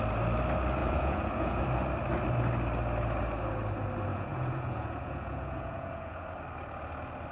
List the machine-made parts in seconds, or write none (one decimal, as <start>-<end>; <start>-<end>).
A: 0.8-1.6; 4.1-6.2